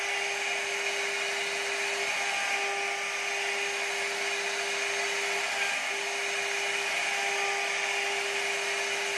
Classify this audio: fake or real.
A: real